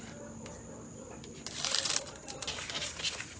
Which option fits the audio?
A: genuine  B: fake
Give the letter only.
A